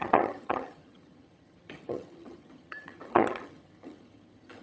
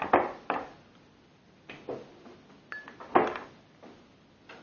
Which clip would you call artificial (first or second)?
first